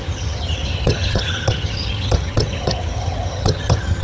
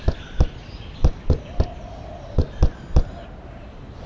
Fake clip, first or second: first